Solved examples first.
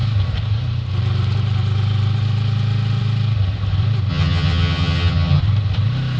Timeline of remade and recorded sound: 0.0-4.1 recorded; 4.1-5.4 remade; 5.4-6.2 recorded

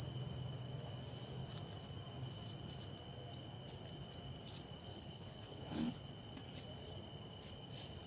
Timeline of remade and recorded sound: 0.0-4.9 recorded; 4.9-6.0 remade; 6.0-8.1 recorded

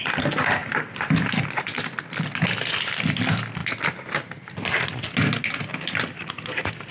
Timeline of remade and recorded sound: 0.0-6.9 recorded

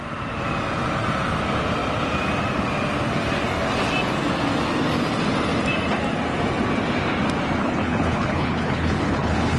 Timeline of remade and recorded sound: 0.0-7.6 recorded; 7.6-9.6 remade

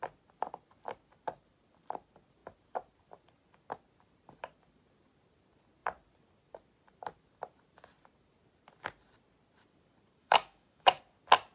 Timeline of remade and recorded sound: 0.0-10.2 recorded; 10.2-11.0 remade; 11.0-11.5 recorded

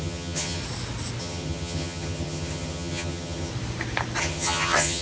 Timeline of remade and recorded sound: 0.0-0.6 remade; 0.6-1.2 recorded; 1.2-3.5 remade; 3.5-4.2 recorded; 4.2-5.0 remade

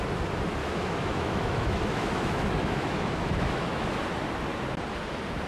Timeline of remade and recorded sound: 0.0-0.6 recorded; 0.6-3.9 remade; 3.9-5.5 recorded

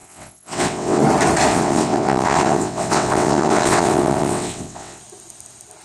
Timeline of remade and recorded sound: 0.0-1.0 remade; 1.0-1.5 recorded; 1.5-5.0 remade; 5.0-5.8 recorded